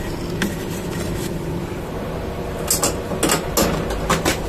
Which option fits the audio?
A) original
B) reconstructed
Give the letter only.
A